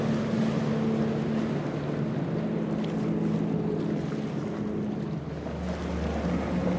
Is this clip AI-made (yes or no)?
no